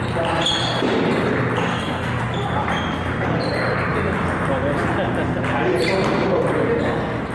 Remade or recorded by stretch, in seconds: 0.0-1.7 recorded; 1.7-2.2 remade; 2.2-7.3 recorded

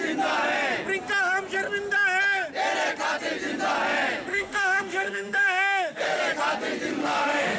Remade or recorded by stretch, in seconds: 0.0-4.3 recorded; 4.3-6.2 remade; 6.2-7.0 recorded; 7.0-7.6 remade

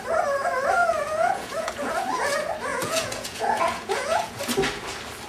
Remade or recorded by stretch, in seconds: 0.0-0.8 recorded; 0.8-1.9 remade; 1.9-2.7 recorded; 2.7-4.4 remade; 4.4-5.3 recorded